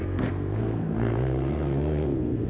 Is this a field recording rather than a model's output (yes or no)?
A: no